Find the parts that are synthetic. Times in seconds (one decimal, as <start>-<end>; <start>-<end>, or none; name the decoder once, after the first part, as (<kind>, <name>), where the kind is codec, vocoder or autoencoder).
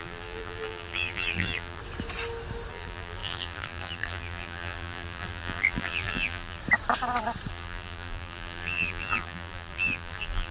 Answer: 0.0-1.8 (vocoder, BigVGAN v2); 2.7-6.6; 7.5-10.5